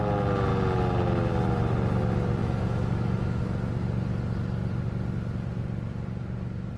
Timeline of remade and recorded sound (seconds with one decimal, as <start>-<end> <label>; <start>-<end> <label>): 0.0-2.4 recorded; 2.4-3.4 remade; 3.4-6.8 recorded